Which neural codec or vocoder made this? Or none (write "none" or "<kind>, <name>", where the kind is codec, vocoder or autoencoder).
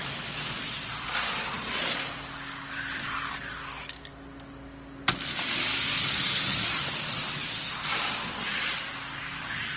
none